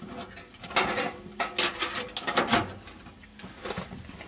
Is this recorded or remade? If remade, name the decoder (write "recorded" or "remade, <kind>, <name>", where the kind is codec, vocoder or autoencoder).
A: recorded